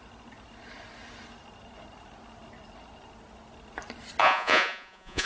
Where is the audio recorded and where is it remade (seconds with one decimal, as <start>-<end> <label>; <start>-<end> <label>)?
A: 0.0-4.2 recorded; 4.2-5.3 remade